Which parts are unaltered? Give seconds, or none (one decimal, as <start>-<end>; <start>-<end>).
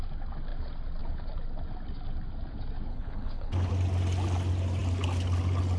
0.0-2.9; 3.7-5.8